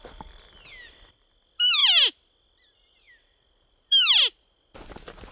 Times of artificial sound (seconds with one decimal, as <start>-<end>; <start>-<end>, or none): none

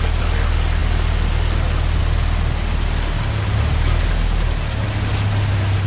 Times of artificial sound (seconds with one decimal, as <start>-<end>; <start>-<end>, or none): none

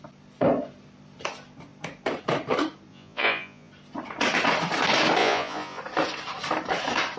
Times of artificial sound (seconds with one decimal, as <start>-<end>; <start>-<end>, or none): 2.9-3.7; 5.2-5.8

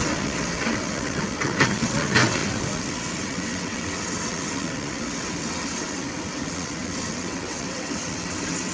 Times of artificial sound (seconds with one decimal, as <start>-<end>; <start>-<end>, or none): 0.0-8.7

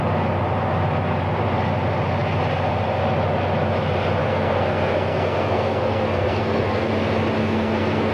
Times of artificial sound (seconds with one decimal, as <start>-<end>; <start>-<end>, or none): 4.2-6.9; 7.4-8.1

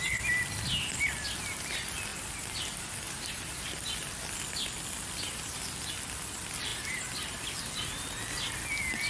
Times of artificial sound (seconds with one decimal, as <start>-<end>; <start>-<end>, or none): 6.7-8.1